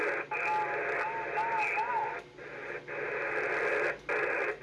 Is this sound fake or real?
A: real